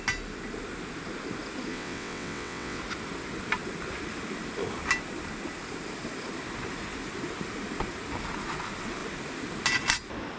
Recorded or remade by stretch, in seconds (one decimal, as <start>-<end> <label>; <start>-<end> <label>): 0.0-1.7 recorded; 1.7-2.8 remade; 2.8-10.4 recorded